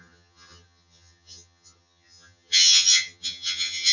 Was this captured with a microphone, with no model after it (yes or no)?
no